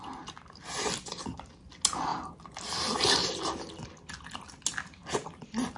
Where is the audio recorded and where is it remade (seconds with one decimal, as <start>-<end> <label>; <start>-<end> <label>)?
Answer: 0.0-5.8 recorded